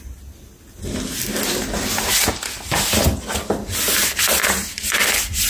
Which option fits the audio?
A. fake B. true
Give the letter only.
B